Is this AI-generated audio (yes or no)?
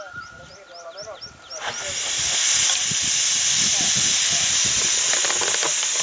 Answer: no